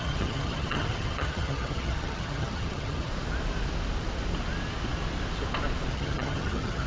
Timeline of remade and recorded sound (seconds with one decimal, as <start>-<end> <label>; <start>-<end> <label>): 0.0-3.1 remade; 3.1-5.9 recorded; 5.9-6.9 remade